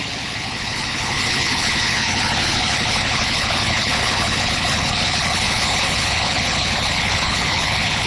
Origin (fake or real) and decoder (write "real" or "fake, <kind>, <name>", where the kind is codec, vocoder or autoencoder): fake, codec, HILCodec